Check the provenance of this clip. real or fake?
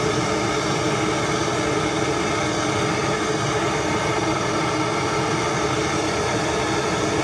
real